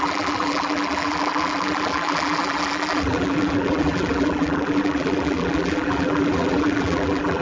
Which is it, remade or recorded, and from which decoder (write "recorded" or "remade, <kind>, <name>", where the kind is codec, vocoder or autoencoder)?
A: remade, vocoder, BigVGAN v2